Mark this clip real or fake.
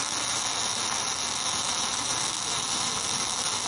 real